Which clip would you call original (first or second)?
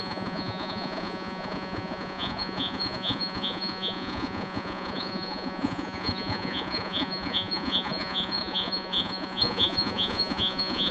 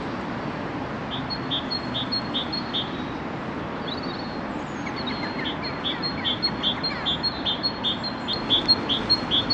second